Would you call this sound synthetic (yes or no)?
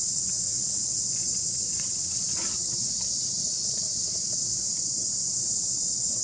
yes